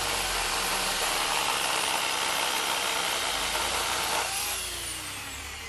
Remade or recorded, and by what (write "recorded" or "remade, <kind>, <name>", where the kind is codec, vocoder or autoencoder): remade, vocoder, BigVGAN v2